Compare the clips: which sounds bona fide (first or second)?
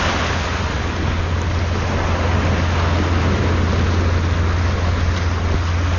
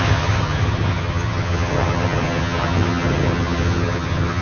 first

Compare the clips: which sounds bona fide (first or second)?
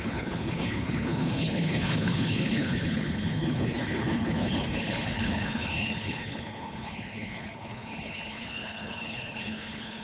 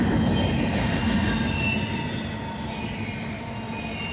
second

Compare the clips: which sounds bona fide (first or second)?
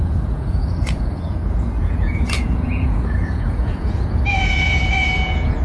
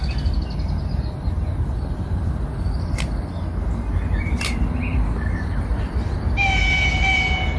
second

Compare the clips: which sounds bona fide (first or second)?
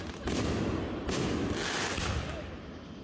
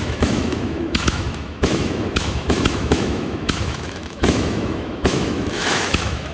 first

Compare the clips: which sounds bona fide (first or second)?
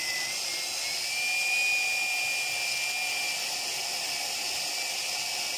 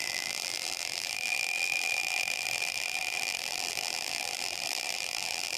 first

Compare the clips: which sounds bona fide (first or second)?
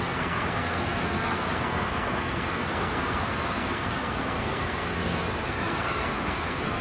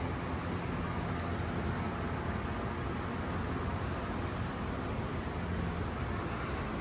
second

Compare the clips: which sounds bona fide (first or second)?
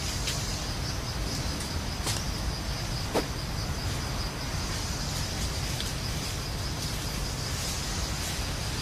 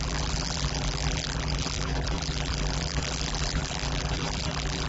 first